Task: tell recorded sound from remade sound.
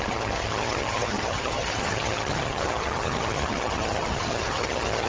remade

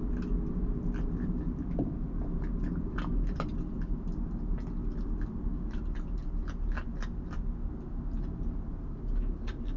recorded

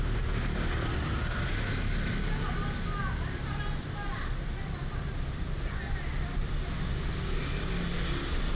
recorded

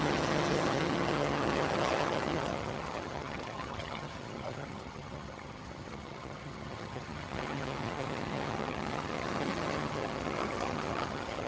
remade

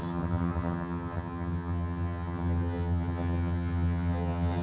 remade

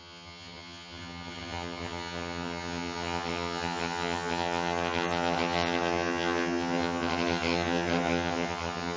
remade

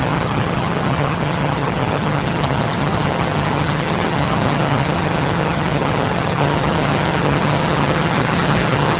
remade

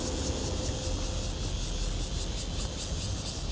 recorded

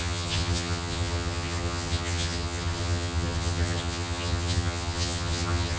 remade